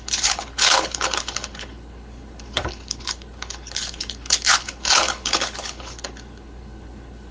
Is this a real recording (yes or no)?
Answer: no